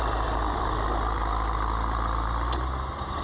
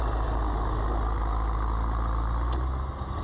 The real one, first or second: second